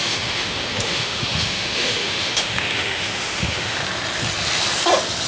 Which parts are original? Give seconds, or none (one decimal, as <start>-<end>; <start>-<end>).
3.8-5.3